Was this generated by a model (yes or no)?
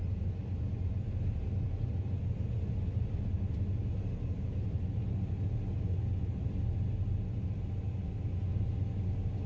no